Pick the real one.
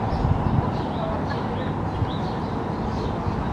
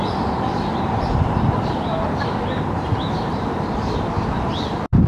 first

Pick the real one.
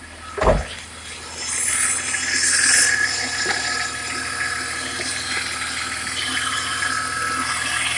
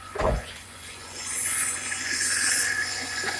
first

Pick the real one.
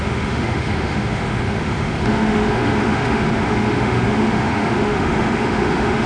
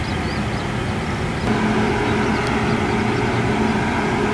second